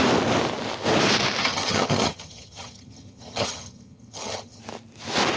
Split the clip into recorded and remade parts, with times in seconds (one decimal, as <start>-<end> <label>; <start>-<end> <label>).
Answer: 0.0-1.4 recorded; 1.4-4.6 remade; 4.6-5.4 recorded

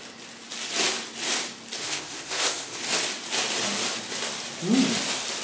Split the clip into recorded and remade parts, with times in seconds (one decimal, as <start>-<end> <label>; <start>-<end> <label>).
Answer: 0.0-1.8 recorded; 1.8-2.8 remade; 2.8-5.4 recorded

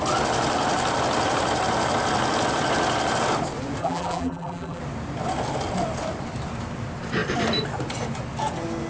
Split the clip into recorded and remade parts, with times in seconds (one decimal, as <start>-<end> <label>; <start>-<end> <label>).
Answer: 0.0-3.8 recorded; 3.8-4.8 remade; 4.8-8.9 recorded

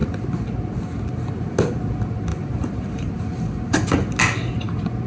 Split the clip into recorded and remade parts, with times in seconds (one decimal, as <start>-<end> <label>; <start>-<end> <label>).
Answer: 0.0-2.3 recorded; 2.3-3.9 remade; 3.9-5.1 recorded

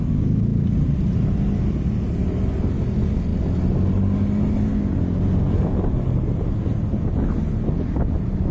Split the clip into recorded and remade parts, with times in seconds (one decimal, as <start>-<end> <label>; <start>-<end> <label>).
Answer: 0.0-8.5 recorded

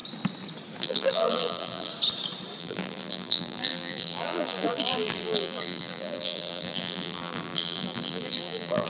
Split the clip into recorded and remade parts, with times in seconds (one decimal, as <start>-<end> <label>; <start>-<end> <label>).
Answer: 0.0-0.8 recorded; 0.8-1.9 remade; 1.9-2.6 recorded; 2.6-8.9 remade

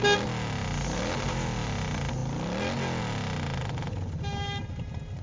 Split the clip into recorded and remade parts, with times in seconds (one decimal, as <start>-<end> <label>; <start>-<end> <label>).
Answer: 0.0-5.2 recorded